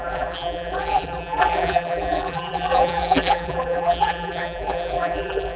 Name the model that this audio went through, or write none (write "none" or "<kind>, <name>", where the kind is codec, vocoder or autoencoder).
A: vocoder, BigVGAN v2